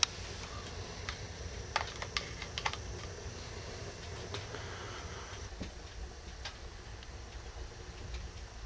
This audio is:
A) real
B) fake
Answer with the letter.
A